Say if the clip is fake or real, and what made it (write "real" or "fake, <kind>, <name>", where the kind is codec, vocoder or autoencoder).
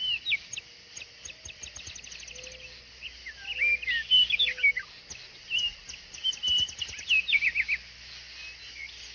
real